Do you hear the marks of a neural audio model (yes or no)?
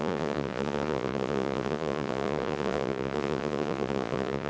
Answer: yes